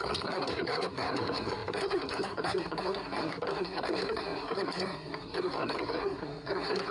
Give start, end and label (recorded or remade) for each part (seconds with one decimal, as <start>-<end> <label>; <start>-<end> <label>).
0.0-6.9 remade